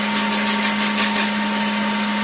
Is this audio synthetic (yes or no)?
no